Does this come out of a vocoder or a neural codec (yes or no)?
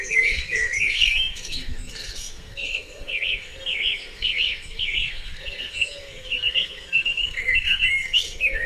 yes